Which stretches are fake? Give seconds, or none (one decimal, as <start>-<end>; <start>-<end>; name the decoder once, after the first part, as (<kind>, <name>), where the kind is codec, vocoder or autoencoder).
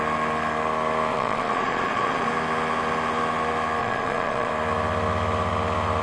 1.1-2.3 (vocoder, Vocos); 3.8-4.5